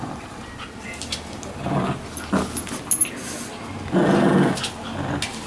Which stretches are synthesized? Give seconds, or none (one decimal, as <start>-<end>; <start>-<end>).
none